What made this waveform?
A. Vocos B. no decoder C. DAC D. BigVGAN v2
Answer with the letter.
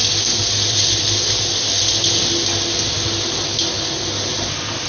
B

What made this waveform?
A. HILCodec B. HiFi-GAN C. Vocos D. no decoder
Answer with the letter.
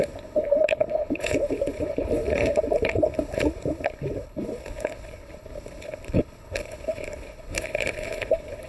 A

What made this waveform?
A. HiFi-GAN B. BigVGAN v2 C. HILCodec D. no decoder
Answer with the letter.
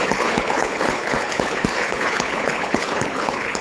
C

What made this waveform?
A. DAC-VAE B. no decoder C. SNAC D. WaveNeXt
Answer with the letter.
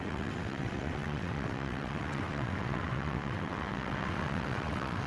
D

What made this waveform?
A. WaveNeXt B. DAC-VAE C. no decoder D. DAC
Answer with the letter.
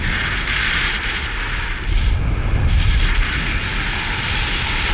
C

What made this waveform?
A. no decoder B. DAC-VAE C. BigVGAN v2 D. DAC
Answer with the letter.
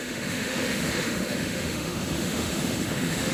B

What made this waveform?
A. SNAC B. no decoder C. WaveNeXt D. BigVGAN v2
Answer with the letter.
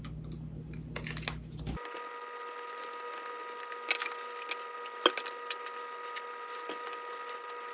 B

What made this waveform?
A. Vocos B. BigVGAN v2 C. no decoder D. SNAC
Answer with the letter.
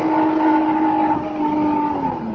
C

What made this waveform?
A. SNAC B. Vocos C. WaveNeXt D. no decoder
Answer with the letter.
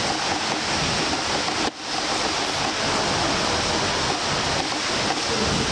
D